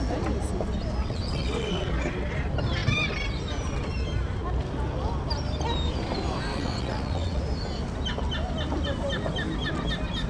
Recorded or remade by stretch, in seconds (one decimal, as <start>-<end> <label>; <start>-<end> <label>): 0.0-1.0 recorded; 1.0-1.9 remade; 1.9-6.5 recorded; 6.5-7.4 remade; 7.4-10.3 recorded